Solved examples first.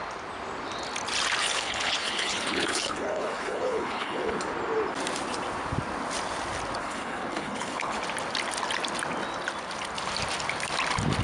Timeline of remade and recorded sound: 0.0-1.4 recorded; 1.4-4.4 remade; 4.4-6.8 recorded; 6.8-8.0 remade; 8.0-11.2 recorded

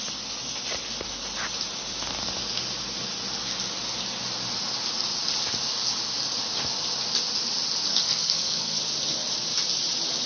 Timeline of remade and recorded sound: 0.0-7.9 recorded; 7.9-8.8 remade; 8.8-10.3 recorded

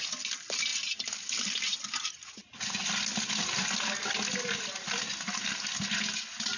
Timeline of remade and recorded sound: 0.0-6.6 recorded

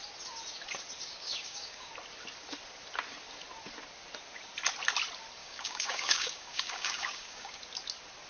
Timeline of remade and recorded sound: 0.0-1.1 recorded; 1.1-1.9 remade; 1.9-5.4 recorded; 5.4-7.6 remade; 7.6-8.3 recorded

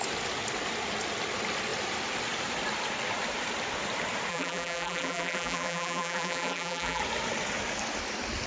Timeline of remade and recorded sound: 0.0-4.3 recorded; 4.3-7.0 remade; 7.0-8.5 recorded

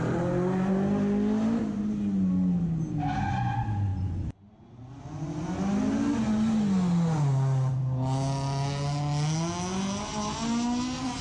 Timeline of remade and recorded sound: 0.0-11.2 recorded

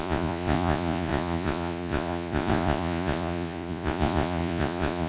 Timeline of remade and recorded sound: 0.0-5.1 remade